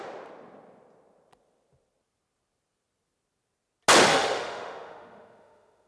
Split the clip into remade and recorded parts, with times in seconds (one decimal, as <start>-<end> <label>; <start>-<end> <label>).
0.0-4.1 recorded; 4.1-5.9 remade